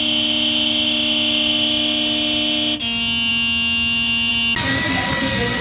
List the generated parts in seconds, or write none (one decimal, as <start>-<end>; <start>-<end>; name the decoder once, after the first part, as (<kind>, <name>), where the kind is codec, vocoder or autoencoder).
none